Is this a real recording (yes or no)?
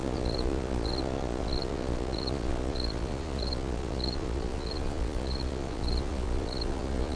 no